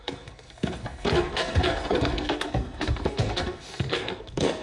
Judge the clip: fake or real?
fake